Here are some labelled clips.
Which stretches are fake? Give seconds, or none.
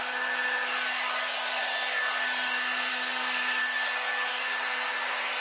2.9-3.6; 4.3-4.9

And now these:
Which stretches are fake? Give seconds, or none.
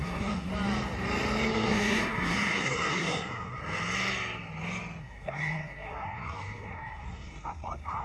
0.0-0.5; 1.5-3.6; 5.0-8.0